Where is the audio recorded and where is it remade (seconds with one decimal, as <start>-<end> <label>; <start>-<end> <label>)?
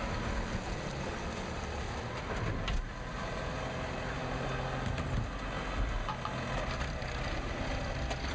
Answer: 0.0-8.3 recorded